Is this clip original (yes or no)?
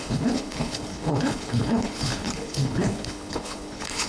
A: no